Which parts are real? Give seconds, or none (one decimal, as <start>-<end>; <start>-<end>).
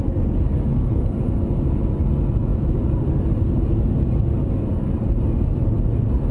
0.0-0.7; 1.4-6.3